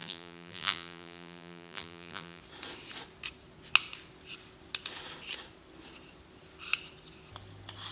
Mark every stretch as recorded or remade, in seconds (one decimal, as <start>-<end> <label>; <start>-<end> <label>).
0.0-2.4 remade; 2.4-7.9 recorded